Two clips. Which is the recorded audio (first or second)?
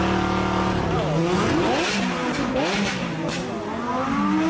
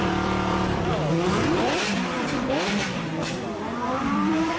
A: first